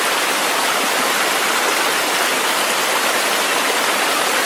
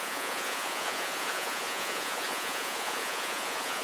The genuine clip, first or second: first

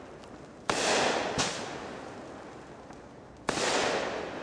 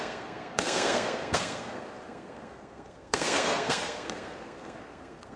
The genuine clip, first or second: first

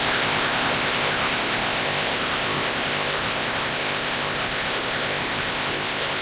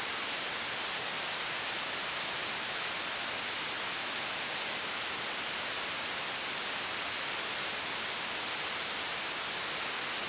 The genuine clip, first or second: second